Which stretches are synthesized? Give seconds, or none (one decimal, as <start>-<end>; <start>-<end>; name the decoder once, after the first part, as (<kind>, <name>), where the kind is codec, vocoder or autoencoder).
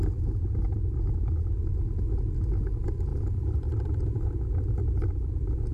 none